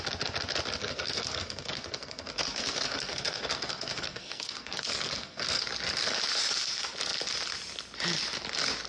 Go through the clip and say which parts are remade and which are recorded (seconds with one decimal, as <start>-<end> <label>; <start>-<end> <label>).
0.0-0.8 recorded; 0.8-5.6 remade; 5.6-8.9 recorded